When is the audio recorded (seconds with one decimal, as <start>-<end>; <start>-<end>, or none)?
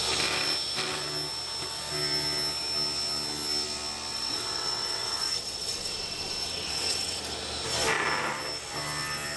0.0-4.1; 7.2-9.4